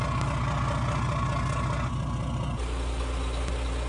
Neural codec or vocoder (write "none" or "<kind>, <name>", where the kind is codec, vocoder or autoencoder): none